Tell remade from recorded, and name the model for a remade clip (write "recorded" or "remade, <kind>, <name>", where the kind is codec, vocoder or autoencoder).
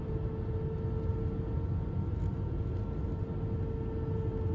recorded